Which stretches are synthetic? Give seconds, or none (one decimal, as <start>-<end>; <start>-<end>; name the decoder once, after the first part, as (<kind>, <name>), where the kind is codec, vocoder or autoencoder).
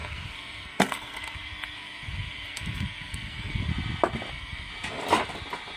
0.0-3.7 (codec, SNAC); 4.3-4.7